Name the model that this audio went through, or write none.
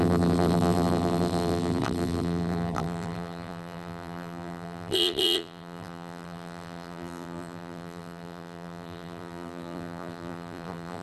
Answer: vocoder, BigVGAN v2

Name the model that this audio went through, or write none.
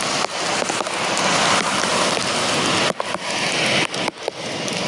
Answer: none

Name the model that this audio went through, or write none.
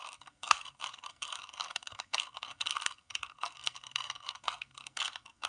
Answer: codec, SNAC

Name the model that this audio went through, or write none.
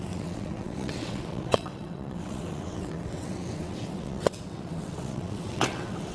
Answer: vocoder, WaveNeXt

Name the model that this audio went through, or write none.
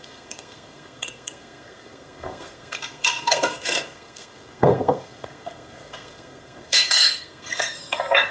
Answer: codec, SNAC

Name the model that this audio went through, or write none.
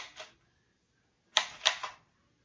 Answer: none